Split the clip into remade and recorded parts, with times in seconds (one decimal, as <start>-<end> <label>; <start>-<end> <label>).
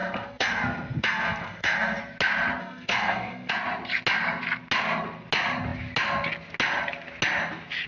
0.0-2.0 remade; 2.0-2.6 recorded; 2.6-3.5 remade; 3.5-7.9 recorded